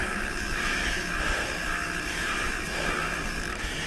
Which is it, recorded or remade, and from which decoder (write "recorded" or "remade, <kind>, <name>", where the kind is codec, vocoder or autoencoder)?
remade, autoencoder, DAC-VAE